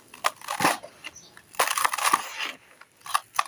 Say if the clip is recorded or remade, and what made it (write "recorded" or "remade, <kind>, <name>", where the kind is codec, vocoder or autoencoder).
recorded